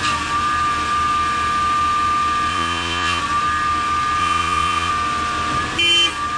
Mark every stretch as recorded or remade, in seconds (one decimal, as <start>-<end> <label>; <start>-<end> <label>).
0.0-2.5 recorded; 2.5-3.2 remade; 3.2-4.2 recorded; 4.2-4.9 remade; 4.9-6.4 recorded